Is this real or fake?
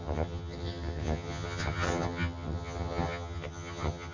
fake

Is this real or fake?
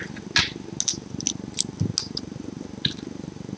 real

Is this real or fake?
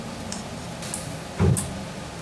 real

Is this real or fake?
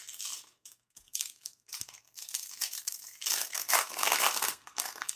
fake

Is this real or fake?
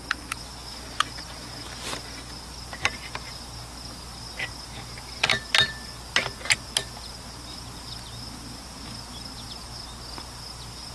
real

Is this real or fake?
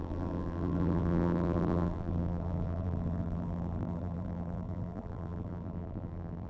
fake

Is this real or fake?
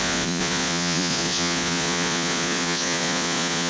fake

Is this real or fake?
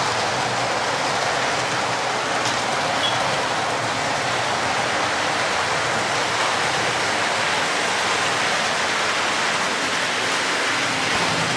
real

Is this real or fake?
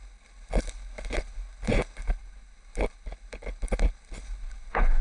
fake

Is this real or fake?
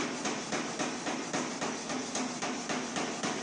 real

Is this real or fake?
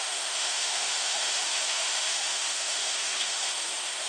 fake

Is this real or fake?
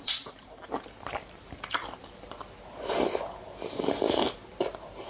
fake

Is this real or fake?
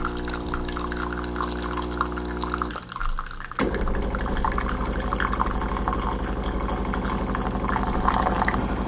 real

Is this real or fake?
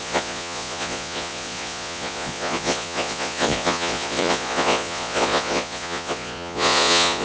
fake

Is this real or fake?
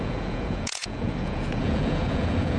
fake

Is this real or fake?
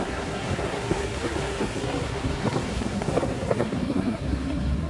fake